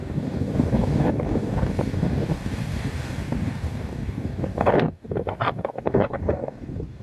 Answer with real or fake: fake